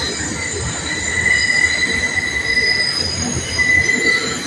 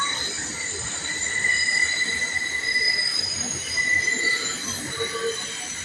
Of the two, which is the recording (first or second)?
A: first